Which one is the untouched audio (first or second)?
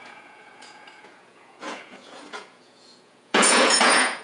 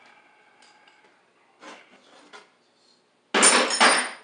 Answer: second